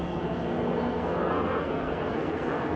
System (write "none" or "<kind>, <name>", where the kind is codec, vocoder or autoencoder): codec, SNAC